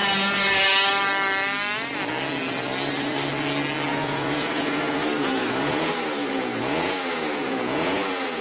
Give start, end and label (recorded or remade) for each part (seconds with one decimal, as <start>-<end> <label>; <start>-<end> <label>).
0.0-3.9 recorded; 3.9-8.4 remade